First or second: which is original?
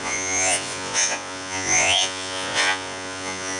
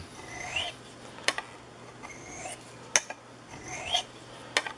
second